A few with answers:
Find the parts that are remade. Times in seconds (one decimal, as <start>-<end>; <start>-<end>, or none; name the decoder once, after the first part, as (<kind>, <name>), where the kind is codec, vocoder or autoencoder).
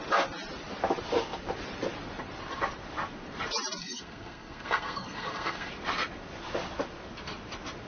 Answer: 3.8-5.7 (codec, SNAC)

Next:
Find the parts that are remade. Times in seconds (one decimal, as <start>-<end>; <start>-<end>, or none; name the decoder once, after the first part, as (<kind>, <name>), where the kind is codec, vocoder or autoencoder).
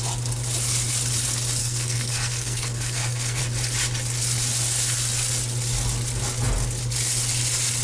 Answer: 1.6-3.4 (codec, SNAC)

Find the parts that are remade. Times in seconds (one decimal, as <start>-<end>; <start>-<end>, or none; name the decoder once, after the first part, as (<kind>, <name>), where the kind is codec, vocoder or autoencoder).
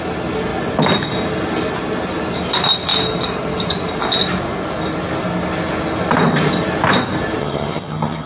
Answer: 7.4-8.3 (vocoder, HiFi-GAN)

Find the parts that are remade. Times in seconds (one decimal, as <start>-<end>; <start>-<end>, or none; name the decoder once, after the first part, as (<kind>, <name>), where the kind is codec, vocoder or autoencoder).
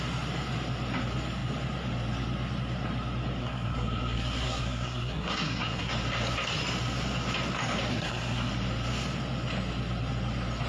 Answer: 3.4-5.9 (codec, SNAC); 7.9-8.5